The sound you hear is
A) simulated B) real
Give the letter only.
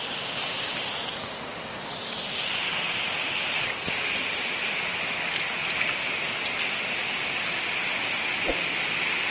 B